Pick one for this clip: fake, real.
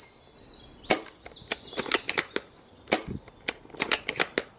real